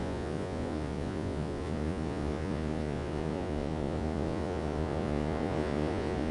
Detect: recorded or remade remade